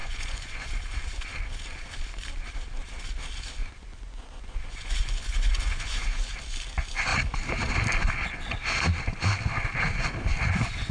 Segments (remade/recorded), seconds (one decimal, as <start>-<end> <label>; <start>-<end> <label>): 0.0-0.7 remade; 0.7-3.6 recorded; 3.6-6.3 remade; 6.3-10.9 recorded